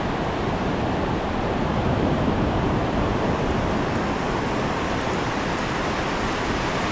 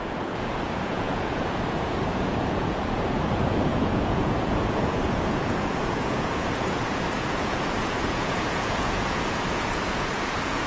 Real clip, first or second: first